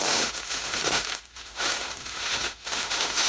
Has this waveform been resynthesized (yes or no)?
yes